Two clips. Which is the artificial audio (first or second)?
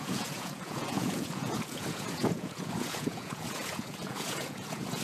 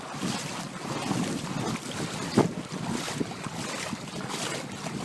first